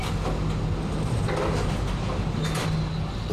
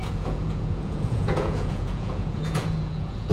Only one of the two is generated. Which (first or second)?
second